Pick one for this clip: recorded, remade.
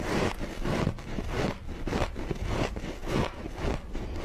recorded